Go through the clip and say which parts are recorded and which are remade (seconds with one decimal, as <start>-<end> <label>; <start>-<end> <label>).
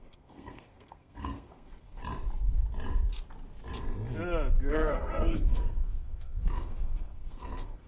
0.0-2.0 remade; 2.0-4.7 recorded; 4.7-7.9 remade